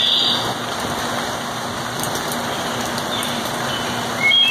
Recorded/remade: recorded